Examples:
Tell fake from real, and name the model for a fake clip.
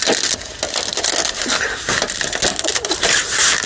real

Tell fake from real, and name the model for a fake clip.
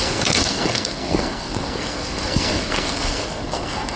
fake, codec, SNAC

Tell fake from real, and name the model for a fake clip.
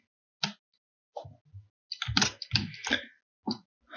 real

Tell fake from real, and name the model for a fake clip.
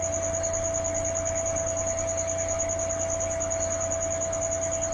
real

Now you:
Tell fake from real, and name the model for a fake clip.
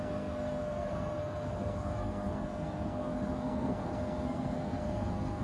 fake, codec, SNAC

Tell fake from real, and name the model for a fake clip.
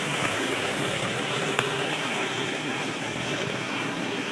fake, codec, SNAC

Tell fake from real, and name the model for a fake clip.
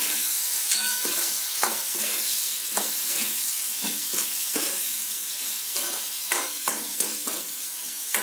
fake, codec, SNAC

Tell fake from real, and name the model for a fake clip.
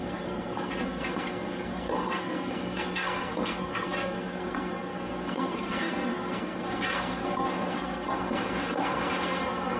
fake, codec, SNAC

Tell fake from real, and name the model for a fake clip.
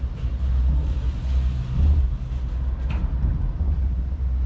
real